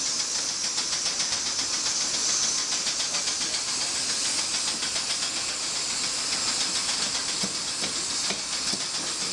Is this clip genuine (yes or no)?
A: yes